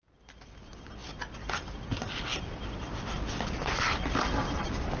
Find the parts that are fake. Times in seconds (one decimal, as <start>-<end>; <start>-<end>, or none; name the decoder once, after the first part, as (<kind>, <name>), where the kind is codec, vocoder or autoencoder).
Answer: none